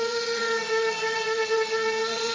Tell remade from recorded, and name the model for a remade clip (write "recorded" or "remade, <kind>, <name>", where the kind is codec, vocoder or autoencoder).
remade, vocoder, WaveNeXt